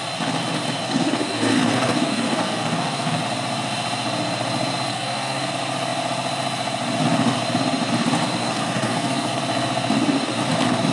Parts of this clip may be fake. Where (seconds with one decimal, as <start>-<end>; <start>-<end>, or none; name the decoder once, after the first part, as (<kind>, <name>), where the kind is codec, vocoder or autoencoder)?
0.8-3.2 (codec, SNAC); 4.9-5.5; 8.4-9.4